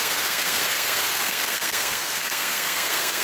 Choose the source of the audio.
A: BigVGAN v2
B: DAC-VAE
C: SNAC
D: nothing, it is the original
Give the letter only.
C